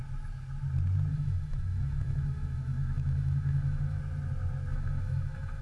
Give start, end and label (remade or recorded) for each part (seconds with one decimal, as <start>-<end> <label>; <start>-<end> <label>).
0.0-1.1 recorded; 1.1-4.0 remade; 4.0-4.7 recorded; 4.7-5.6 remade